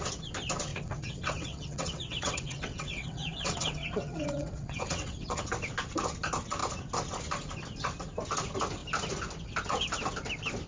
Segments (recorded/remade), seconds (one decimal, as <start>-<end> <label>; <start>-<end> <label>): 0.0-0.7 recorded; 0.7-5.4 remade; 5.4-10.7 recorded